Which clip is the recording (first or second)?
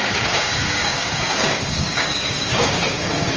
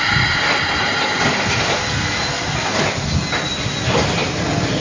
second